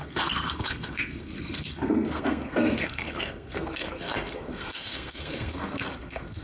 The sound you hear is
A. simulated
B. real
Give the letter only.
A